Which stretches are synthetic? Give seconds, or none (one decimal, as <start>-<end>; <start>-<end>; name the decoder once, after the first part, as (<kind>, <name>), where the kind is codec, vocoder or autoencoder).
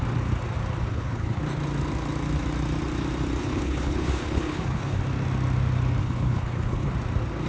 0.9-1.4 (codec, HILCodec); 3.4-5.0; 6.0-6.9